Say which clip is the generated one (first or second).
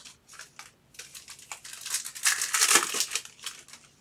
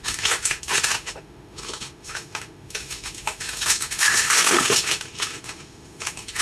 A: second